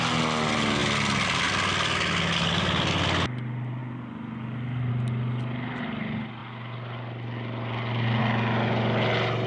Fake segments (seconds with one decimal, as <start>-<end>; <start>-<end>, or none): none